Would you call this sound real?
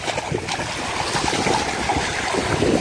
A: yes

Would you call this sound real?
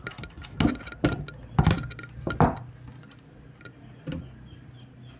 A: yes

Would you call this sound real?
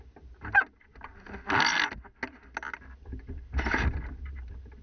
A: yes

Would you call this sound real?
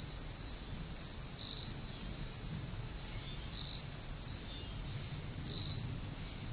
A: yes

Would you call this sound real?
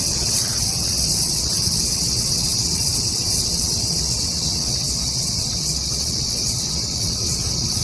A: no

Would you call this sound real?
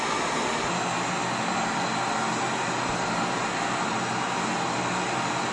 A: yes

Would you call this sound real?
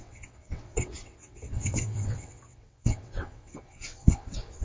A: no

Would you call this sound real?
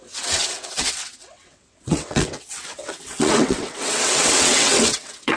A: no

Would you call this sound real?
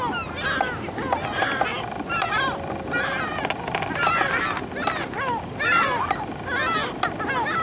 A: yes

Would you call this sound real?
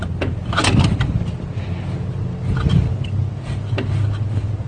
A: yes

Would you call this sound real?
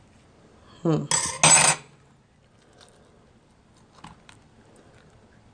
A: yes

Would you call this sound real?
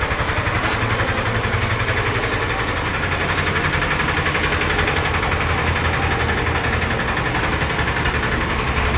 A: yes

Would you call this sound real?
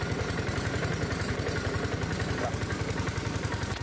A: yes